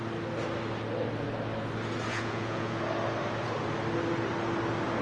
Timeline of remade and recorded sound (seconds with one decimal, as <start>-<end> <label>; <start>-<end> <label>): 0.0-2.1 recorded; 2.1-2.8 remade; 2.8-5.0 recorded